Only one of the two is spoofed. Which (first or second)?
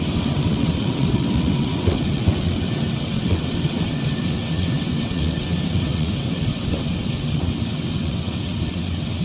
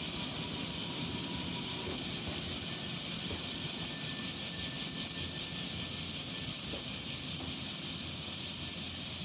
first